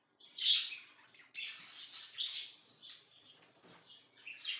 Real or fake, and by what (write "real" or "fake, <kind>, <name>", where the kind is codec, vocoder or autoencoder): real